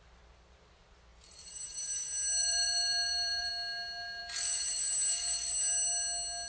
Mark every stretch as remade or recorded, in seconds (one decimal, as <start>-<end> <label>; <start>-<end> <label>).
0.0-1.1 recorded; 1.1-1.8 remade; 1.8-2.4 recorded; 2.4-3.5 remade; 3.5-6.5 recorded